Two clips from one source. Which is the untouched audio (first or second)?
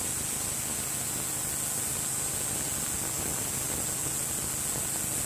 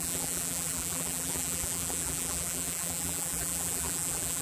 first